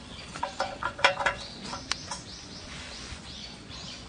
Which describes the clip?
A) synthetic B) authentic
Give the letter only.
A